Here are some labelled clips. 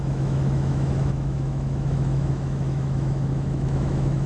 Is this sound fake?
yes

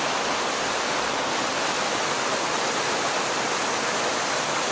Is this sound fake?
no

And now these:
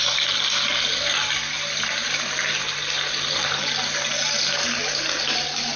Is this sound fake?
no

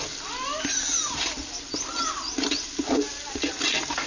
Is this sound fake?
no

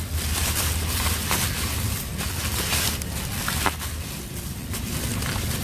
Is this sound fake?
yes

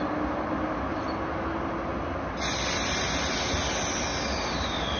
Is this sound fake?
no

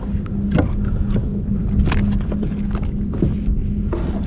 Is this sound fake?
no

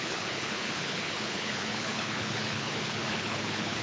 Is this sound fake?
yes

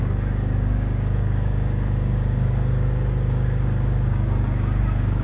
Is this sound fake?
yes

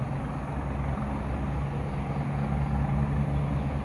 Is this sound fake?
no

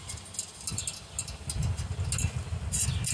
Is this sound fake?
no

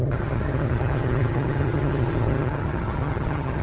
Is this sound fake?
yes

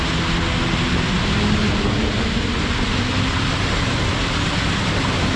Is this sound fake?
no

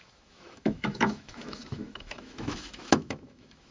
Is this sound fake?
yes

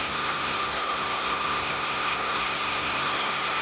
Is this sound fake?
yes